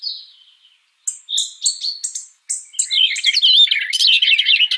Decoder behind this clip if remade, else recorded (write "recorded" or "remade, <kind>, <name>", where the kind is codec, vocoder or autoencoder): recorded